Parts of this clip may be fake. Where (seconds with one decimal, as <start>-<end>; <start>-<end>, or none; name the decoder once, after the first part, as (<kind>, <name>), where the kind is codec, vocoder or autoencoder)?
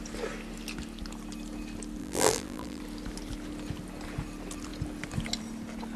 2.0-2.8 (vocoder, BigVGAN v2)